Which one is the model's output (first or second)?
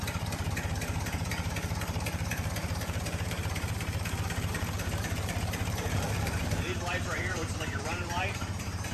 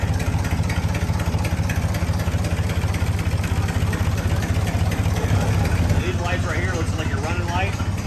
first